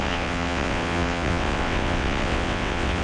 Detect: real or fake fake